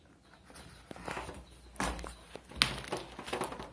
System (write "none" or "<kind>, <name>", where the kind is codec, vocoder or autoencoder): none